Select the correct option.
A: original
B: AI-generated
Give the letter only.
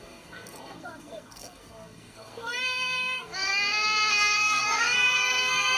B